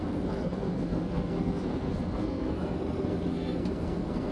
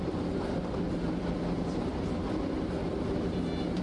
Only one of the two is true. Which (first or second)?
second